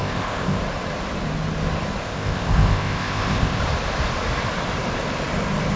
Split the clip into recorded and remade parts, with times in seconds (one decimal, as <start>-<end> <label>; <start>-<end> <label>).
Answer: 0.0-0.6 remade; 0.6-2.0 recorded; 2.0-3.6 remade; 3.6-5.8 recorded